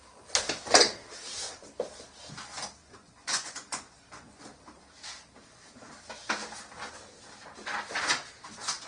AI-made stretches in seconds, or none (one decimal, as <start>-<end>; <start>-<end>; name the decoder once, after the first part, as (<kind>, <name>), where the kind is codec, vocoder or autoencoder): 2.8-4.6 (vocoder, Vocos)